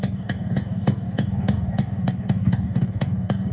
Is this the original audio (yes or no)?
no